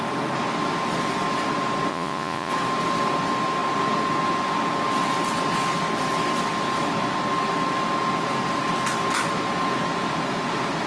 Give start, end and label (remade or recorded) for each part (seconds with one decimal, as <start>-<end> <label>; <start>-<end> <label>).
0.0-1.9 recorded; 1.9-2.5 remade; 2.5-10.9 recorded